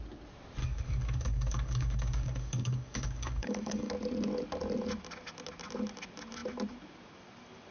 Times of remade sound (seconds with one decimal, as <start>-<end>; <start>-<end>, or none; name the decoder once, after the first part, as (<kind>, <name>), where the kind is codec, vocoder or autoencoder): 0.6-3.9 (codec, DAC)